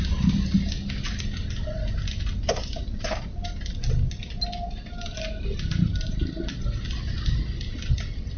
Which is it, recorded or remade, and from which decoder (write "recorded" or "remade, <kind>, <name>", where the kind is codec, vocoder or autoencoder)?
recorded